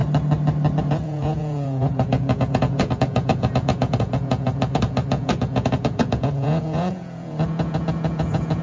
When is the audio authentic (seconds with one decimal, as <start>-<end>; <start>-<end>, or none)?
0.0-0.8